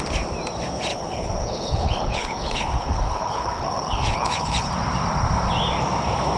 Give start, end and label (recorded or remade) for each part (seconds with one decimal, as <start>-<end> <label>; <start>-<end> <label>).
0.0-0.9 recorded; 0.9-4.7 remade; 4.7-6.4 recorded

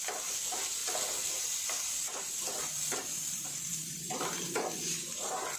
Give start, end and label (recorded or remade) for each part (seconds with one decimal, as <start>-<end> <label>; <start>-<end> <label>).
0.0-0.8 remade; 0.8-1.4 recorded; 1.4-5.6 remade

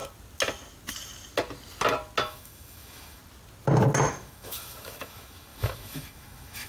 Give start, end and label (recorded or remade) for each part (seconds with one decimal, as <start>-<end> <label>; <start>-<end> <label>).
0.0-2.2 recorded; 2.2-3.2 remade; 3.2-4.1 recorded; 4.1-6.7 remade

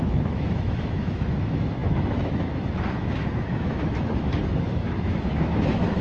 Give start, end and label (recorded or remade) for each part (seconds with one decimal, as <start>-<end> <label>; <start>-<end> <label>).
0.0-6.0 remade

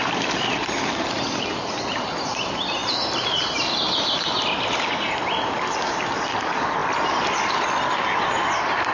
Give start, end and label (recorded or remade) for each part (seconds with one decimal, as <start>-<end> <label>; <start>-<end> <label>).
0.0-8.9 recorded